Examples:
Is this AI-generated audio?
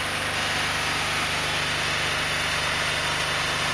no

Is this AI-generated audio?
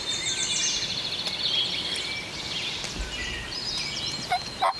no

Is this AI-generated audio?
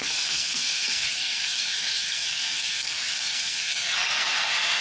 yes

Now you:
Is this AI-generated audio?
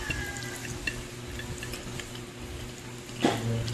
no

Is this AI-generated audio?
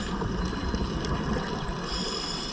no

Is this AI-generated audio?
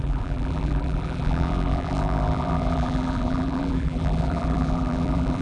yes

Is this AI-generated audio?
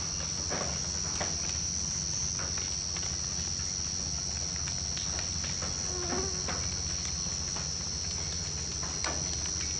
no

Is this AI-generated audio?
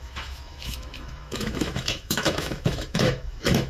yes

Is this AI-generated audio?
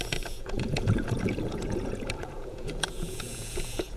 yes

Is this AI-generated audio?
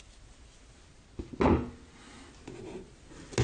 no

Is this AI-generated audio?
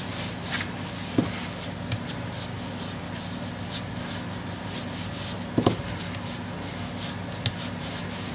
no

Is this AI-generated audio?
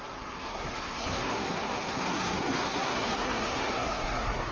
yes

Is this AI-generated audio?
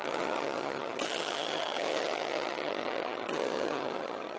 yes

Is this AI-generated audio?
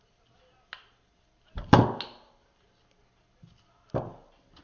no